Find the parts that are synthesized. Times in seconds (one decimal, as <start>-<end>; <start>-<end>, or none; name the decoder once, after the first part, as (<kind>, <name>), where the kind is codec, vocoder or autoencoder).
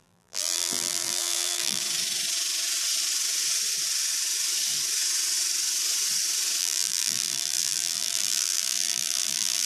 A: 0.0-1.8 (vocoder, BigVGAN v2); 6.6-9.7